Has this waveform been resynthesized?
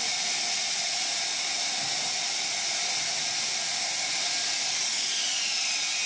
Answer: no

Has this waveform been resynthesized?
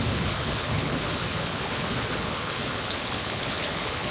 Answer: yes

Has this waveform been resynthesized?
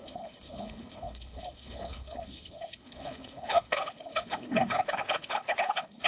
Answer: yes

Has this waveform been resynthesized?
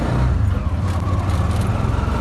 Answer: no